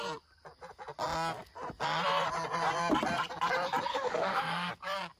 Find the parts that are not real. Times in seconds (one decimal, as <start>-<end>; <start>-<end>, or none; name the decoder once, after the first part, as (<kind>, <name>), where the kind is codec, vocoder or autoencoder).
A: 3.9-4.7 (autoencoder, DAC-VAE)